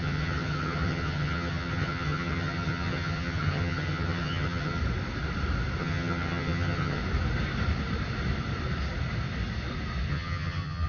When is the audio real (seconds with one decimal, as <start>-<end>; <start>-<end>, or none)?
4.8-5.8; 7.0-10.1